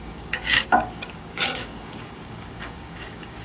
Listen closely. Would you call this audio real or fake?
fake